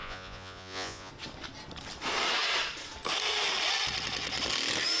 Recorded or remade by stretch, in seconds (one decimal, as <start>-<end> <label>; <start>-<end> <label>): 0.0-1.1 remade; 1.1-5.0 recorded